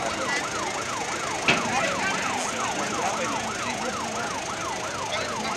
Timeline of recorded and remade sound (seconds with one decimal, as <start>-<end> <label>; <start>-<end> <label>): 0.0-5.6 recorded